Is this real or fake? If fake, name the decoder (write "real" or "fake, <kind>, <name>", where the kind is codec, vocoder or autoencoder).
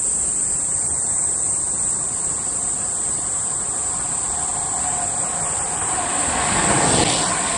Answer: fake, vocoder, BigVGAN v2